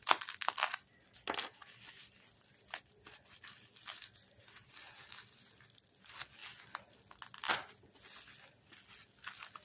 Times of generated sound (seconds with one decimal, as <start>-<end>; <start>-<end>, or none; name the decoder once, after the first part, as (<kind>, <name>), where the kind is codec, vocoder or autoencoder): none